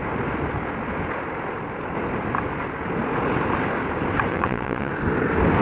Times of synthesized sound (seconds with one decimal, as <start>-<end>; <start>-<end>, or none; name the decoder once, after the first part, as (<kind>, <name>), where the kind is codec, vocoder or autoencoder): 4.3-4.9 (vocoder, WaveNeXt)